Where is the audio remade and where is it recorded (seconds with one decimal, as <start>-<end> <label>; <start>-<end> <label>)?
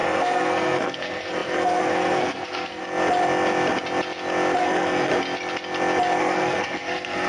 0.0-2.8 remade; 2.8-4.6 recorded; 4.6-5.1 remade; 5.1-6.2 recorded; 6.2-7.3 remade